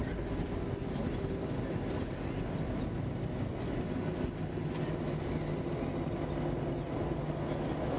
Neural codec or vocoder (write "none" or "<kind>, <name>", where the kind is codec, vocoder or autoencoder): none